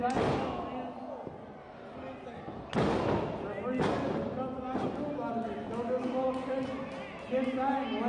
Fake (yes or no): no